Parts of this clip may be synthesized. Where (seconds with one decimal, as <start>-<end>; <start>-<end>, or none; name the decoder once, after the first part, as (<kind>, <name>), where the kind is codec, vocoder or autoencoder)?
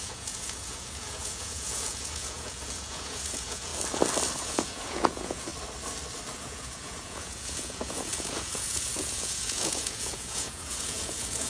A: 0.0-3.7 (vocoder, Vocos); 4.4-5.5; 6.3-11.5